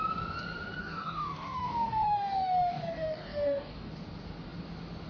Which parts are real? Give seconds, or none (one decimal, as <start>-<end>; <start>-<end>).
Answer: 0.0-0.8; 3.9-5.1